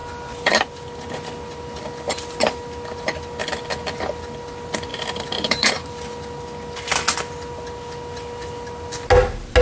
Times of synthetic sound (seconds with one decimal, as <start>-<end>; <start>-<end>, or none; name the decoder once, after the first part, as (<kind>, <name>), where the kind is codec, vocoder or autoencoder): 4.9-5.9 (vocoder, BigVGAN v2)